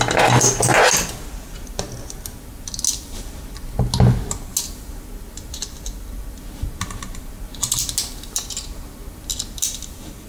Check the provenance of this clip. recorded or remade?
recorded